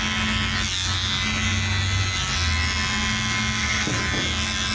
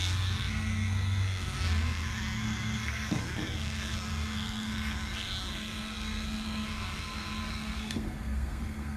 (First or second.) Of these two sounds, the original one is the first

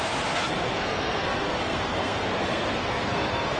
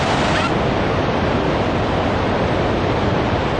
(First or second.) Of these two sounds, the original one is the second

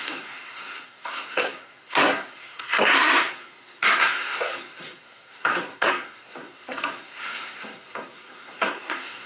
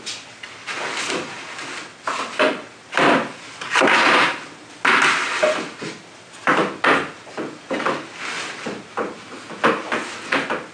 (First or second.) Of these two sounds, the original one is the second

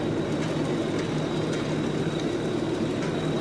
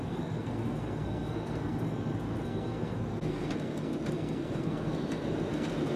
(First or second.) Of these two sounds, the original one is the first